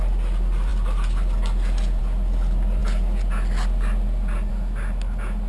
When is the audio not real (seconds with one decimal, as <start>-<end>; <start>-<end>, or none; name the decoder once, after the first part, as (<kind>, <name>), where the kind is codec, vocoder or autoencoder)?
none